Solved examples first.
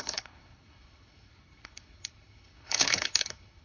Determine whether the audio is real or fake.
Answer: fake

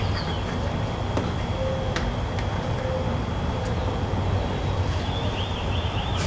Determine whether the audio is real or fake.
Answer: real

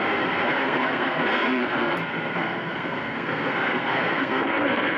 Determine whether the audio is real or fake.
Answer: fake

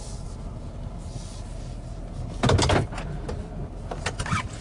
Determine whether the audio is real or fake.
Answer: real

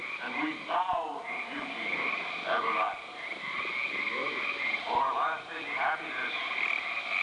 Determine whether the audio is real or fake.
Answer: real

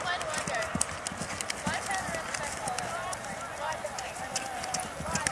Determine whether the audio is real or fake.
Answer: real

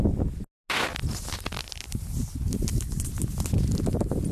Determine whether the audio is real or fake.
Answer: real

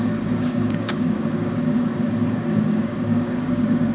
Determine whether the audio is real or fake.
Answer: fake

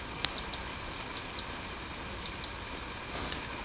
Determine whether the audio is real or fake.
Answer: real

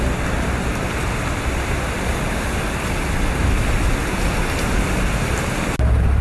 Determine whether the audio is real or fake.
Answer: real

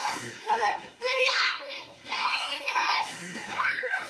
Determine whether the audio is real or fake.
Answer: fake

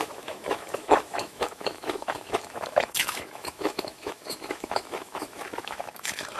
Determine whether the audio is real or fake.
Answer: fake